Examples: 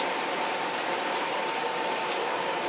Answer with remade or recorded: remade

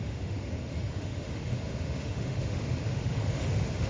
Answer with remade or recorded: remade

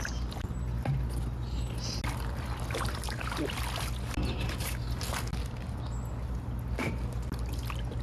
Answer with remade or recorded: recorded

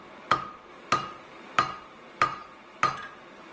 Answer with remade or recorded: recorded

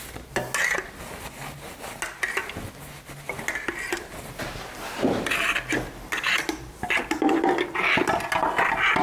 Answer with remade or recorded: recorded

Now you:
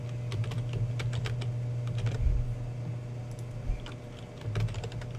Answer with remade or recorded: recorded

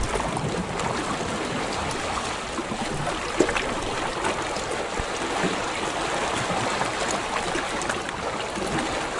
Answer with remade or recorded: recorded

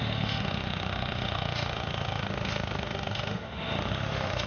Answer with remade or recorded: remade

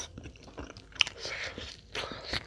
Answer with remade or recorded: remade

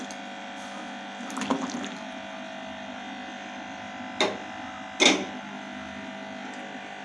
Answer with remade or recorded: recorded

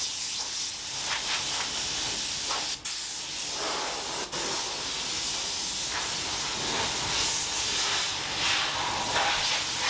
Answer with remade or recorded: recorded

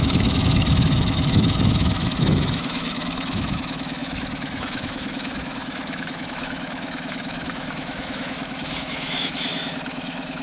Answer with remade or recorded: remade